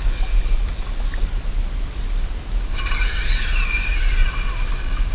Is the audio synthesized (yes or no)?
no